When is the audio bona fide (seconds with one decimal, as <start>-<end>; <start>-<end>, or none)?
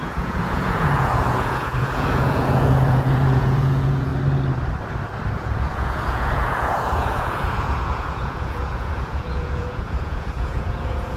4.1-5.3